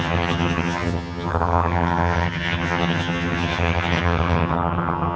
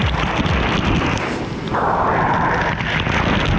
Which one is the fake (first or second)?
first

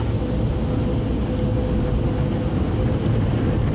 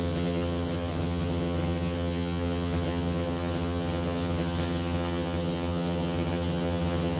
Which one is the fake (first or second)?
second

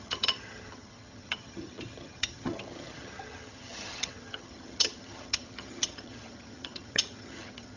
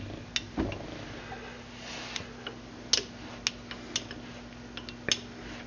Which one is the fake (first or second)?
first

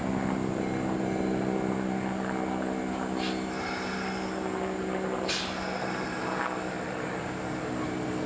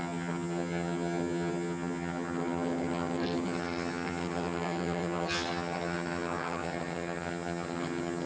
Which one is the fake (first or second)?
second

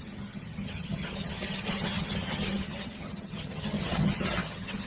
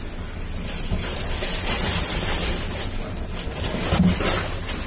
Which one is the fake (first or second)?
first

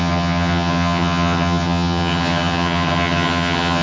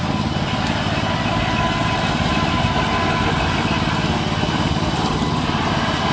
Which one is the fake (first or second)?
first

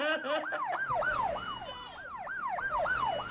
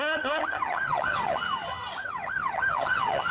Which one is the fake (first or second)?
second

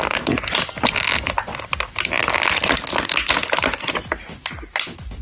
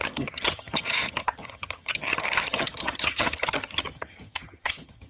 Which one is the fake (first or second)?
second